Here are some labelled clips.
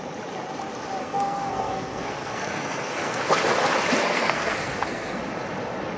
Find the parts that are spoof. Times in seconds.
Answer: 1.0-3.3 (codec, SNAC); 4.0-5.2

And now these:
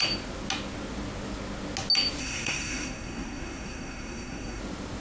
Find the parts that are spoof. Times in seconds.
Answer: 2.2-4.6 (codec, SNAC)

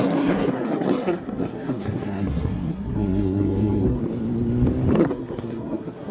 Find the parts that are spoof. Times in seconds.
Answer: 0.0-4.0 (codec, SNAC); 4.9-6.1